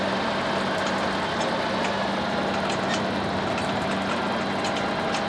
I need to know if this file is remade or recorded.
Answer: recorded